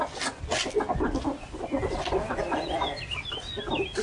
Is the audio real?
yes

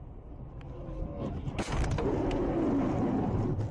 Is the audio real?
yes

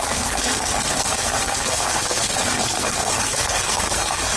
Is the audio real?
no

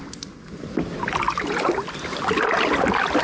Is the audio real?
yes